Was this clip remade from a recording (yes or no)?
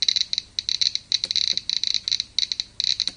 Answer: no